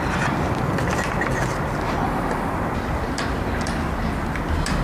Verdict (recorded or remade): recorded